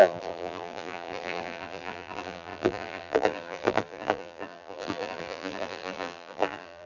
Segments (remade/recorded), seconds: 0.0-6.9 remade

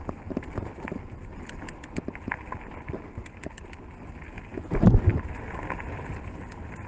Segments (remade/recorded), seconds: 0.0-6.9 recorded

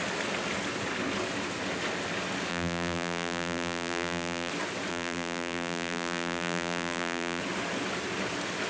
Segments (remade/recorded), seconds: 0.0-2.5 recorded; 2.5-4.5 remade; 4.5-4.9 recorded; 4.9-7.4 remade; 7.4-8.7 recorded

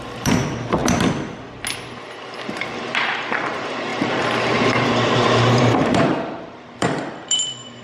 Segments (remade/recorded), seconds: 0.0-0.8 remade; 0.8-2.0 recorded; 2.0-7.8 remade

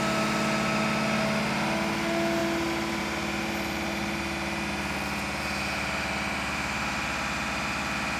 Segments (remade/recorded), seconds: 0.0-2.4 recorded; 2.4-3.0 remade; 3.0-8.2 recorded

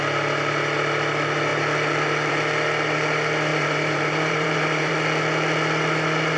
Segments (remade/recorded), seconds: 0.0-3.5 recorded; 3.5-4.9 remade; 4.9-6.4 recorded

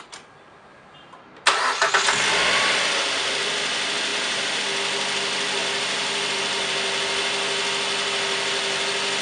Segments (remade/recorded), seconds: 0.0-0.7 recorded; 0.7-1.9 remade; 1.9-4.1 recorded; 4.1-4.6 remade; 4.6-5.6 recorded; 5.6-6.4 remade; 6.4-9.2 recorded